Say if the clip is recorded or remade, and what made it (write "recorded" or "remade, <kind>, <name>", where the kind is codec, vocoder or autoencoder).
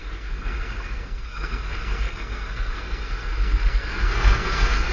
remade, codec, SNAC